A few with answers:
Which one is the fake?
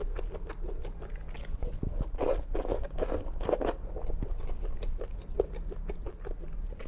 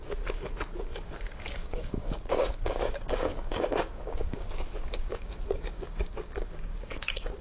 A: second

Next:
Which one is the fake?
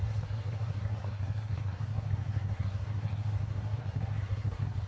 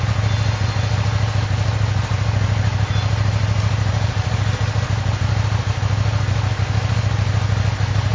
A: first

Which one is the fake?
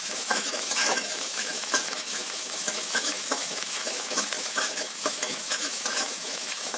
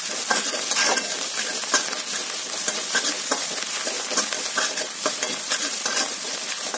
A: first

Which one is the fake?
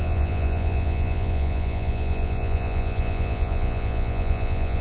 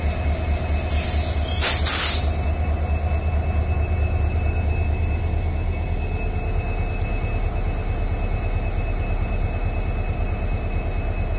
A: first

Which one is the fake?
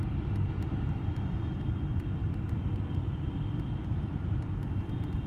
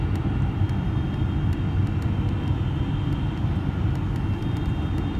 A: first